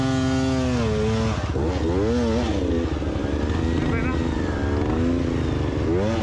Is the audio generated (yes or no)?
no